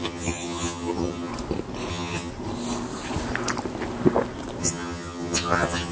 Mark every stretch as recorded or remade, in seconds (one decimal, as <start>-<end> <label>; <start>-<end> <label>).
0.0-1.3 remade; 1.3-1.9 recorded; 1.9-2.3 remade; 2.3-4.6 recorded; 4.6-5.9 remade